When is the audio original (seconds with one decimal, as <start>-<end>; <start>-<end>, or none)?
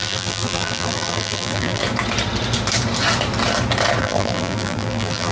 1.8-4.0